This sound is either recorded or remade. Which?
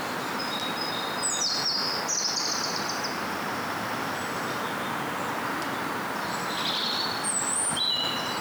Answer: recorded